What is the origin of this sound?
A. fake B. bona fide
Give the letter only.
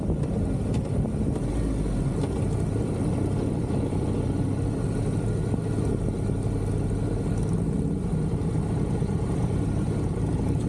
B